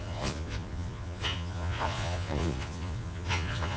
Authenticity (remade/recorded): remade